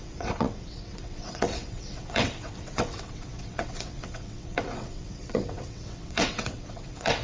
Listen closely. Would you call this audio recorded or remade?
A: remade